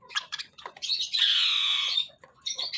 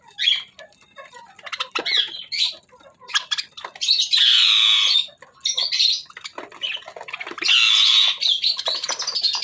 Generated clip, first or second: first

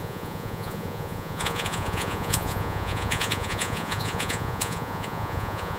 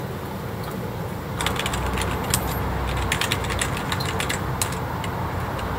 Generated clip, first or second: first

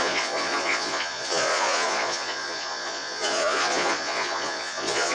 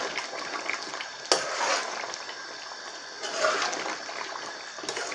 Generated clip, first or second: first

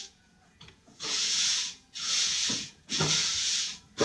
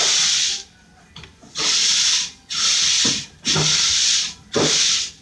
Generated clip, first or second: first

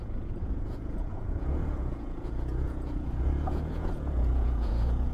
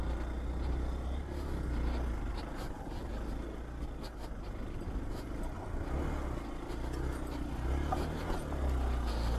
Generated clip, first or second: first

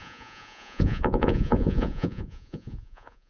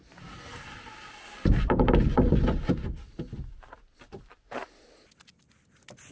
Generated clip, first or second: first